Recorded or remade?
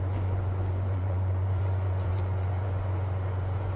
remade